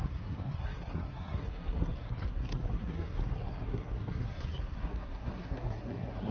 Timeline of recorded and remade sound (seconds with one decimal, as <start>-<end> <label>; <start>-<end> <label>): 0.0-6.3 remade